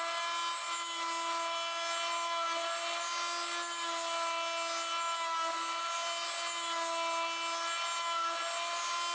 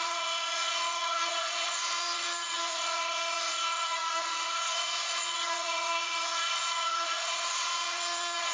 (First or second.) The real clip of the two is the first